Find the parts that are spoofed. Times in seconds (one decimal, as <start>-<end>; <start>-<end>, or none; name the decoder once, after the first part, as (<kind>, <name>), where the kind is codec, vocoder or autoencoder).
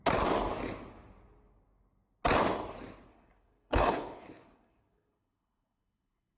3.1-6.4 (codec, HILCodec)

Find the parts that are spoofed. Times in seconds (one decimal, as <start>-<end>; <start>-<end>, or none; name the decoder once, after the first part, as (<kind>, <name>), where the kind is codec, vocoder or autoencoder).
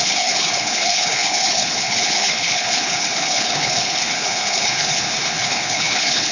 0.0-6.3 (codec, HILCodec)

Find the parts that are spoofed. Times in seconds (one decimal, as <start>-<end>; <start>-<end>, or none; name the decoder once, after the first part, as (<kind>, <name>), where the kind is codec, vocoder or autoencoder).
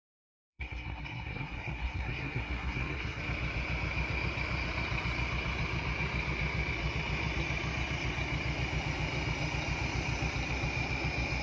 0.0-3.2 (codec, SNAC)